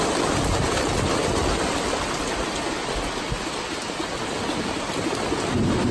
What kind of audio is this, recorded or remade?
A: recorded